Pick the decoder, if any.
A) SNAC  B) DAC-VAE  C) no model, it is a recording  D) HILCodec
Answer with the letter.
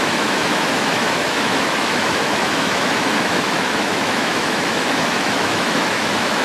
B